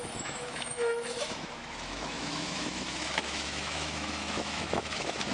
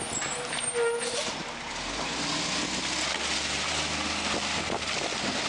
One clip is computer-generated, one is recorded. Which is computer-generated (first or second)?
first